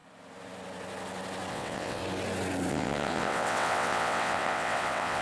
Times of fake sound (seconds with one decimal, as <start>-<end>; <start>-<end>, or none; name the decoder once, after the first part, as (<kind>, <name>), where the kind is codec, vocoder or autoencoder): 1.5-2.0 (vocoder, WaveNeXt); 2.7-5.2

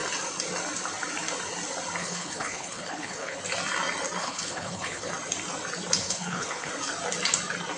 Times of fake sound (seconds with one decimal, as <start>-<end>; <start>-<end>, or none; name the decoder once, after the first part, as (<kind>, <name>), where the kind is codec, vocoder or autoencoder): 2.0-3.4 (codec, HILCodec); 4.2-5.1; 6.0-6.7

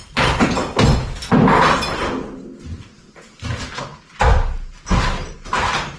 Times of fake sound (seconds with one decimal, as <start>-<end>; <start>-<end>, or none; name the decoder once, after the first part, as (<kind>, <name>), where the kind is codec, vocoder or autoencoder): none